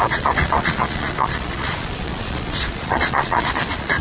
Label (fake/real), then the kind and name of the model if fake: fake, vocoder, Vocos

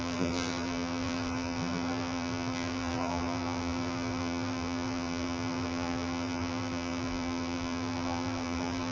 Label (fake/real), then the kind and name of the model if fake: fake, vocoder, BigVGAN v2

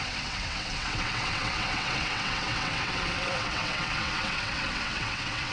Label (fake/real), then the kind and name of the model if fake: fake, vocoder, WaveNeXt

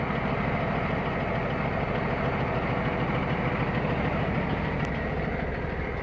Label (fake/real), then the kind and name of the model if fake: real